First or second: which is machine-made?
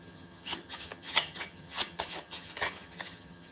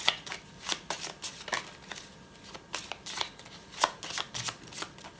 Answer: first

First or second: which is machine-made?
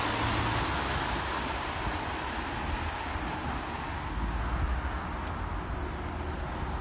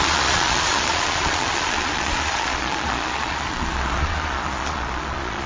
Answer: second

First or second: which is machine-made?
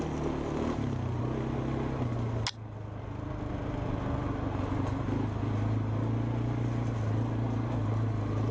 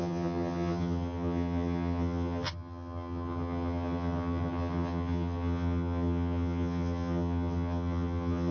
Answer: second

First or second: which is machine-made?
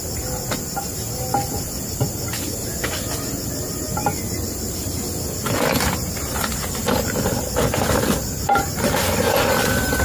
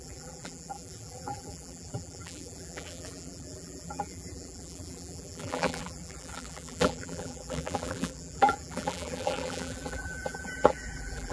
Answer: second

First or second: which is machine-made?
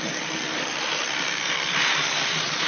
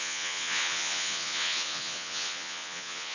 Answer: second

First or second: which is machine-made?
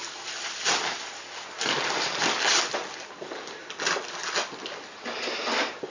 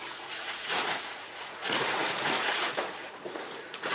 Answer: second